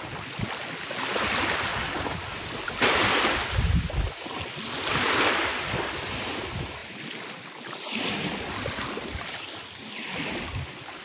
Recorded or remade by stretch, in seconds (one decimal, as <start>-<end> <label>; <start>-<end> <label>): 0.0-11.0 recorded